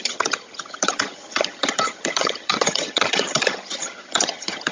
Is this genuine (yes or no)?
no